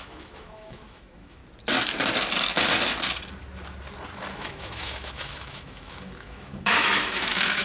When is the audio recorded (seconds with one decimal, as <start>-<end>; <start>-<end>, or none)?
1.4-4.3